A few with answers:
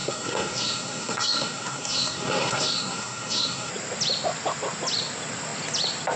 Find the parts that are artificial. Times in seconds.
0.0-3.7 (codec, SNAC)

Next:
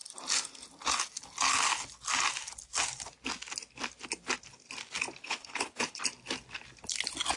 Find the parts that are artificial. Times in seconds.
5.2-6.0 (codec, HILCodec)

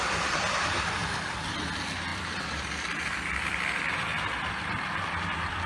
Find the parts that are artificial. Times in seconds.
1.0-1.6 (vocoder, BigVGAN v2); 2.1-5.7

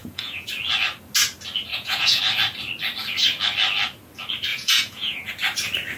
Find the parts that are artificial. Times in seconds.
0.0-0.5 (vocoder, Vocos); 1.7-2.2; 4.5-5.3